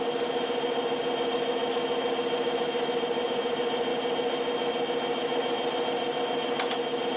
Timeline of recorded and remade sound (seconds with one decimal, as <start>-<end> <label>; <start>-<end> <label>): 0.0-7.2 recorded